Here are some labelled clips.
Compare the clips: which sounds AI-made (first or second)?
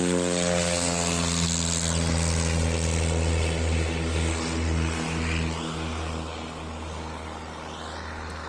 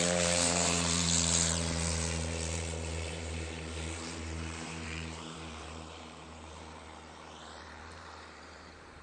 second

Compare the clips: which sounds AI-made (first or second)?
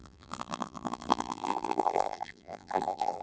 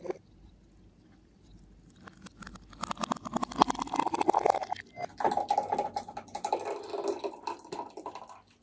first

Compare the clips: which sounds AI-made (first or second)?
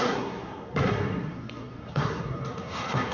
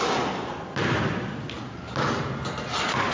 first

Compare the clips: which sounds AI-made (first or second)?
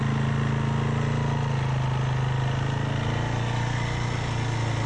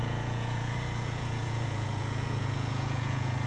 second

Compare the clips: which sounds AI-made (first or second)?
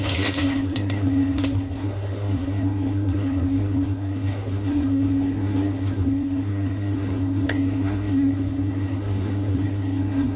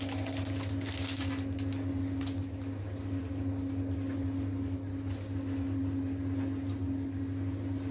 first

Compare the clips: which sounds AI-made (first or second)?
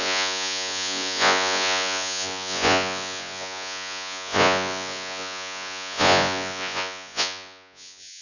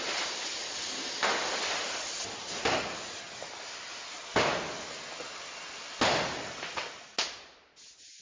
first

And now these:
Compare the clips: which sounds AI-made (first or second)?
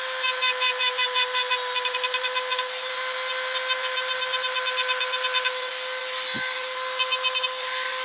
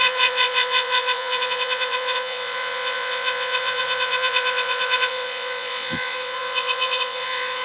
second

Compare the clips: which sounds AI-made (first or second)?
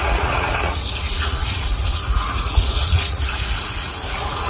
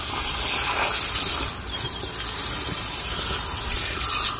first